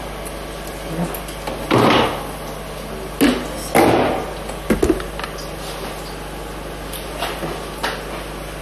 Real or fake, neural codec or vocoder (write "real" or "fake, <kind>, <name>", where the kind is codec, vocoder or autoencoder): real